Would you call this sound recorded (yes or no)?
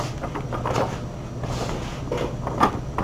yes